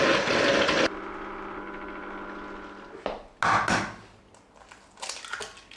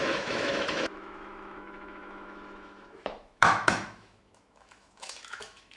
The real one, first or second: first